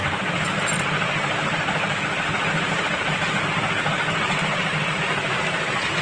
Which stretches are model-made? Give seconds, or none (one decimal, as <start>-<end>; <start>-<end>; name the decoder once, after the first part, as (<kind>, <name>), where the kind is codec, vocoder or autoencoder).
none

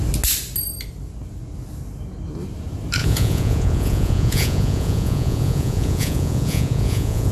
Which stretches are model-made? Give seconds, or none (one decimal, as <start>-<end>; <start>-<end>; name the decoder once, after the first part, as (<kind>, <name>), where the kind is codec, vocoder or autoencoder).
3.0-7.3 (vocoder, Vocos)

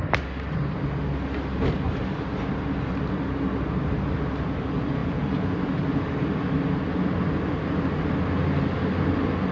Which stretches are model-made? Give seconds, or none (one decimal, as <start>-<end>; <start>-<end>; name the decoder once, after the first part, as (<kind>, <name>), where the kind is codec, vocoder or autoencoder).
5.0-5.5 (vocoder, Vocos)

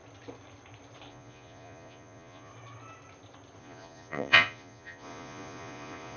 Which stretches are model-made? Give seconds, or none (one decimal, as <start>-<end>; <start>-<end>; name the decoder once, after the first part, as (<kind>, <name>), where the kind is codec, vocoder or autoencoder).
1.1-2.5 (vocoder, Vocos); 3.6-6.2

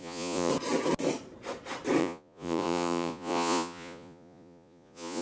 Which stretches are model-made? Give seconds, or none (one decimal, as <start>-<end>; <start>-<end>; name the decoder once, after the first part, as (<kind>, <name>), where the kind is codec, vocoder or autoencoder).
0.0-0.5 (vocoder, Vocos); 2.0-5.2